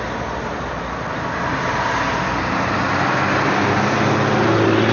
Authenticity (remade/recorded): recorded